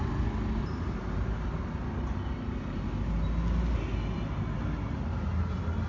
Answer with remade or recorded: recorded